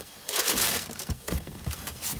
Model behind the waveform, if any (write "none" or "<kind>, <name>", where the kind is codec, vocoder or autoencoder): codec, SNAC